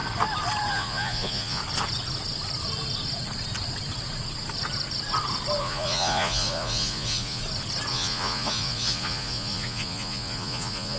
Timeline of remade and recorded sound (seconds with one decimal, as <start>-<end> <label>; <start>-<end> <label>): 0.0-0.7 recorded; 0.7-1.6 remade; 1.6-5.6 recorded; 5.6-7.4 remade; 7.4-7.9 recorded; 7.9-11.0 remade